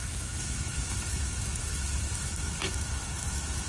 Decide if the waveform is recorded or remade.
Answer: remade